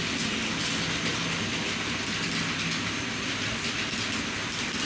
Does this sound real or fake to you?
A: real